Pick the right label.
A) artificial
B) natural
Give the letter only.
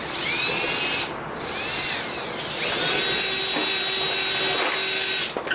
B